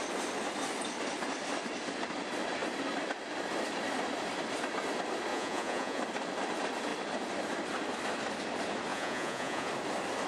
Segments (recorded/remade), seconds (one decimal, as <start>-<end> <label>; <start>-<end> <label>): 0.0-5.3 recorded; 5.3-6.0 remade; 6.0-8.9 recorded; 8.9-9.7 remade; 9.7-10.3 recorded

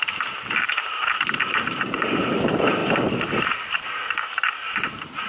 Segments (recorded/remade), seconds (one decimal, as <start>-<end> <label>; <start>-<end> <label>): 0.0-1.0 remade; 1.0-1.6 recorded; 1.6-5.3 remade

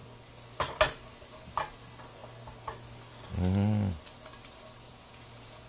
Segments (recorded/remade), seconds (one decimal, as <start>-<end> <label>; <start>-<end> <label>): 0.0-4.9 recorded; 4.9-5.7 remade

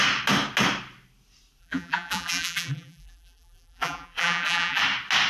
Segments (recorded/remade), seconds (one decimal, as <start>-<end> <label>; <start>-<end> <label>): 0.0-1.6 recorded; 1.6-4.8 remade; 4.8-5.3 recorded

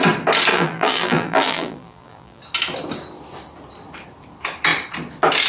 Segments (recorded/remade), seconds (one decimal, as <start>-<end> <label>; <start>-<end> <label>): 0.0-0.5 recorded; 0.5-2.4 remade; 2.4-5.5 recorded

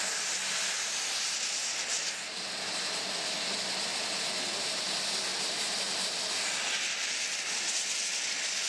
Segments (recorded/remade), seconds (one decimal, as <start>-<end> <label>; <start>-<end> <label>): 0.0-5.3 recorded; 5.3-5.8 remade; 5.8-8.7 recorded

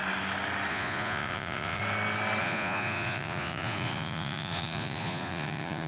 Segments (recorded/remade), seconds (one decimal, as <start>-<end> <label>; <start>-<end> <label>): 0.0-0.7 recorded; 0.7-1.8 remade; 1.8-2.4 recorded; 2.4-5.9 remade